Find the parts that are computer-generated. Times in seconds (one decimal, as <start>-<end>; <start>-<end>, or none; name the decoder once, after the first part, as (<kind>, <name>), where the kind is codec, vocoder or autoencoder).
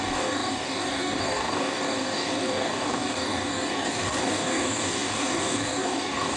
0.0-6.4 (codec, DAC)